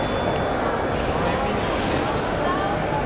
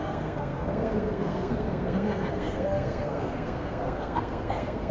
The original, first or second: first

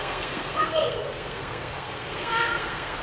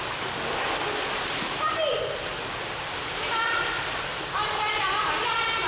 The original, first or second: second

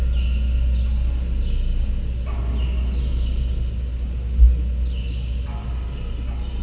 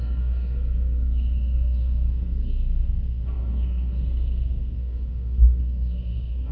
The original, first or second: first